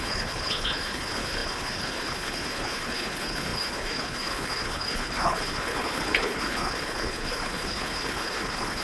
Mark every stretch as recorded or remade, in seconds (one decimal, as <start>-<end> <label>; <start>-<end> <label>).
0.0-8.8 remade